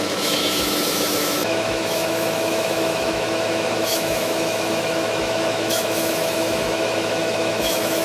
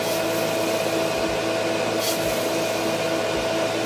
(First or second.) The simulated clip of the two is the first